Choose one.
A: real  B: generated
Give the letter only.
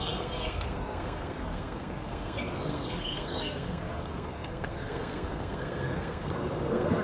B